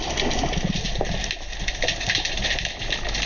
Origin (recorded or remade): recorded